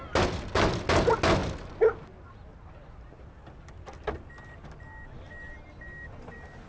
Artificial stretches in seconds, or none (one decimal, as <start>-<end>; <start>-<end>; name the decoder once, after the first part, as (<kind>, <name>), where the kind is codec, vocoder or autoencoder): none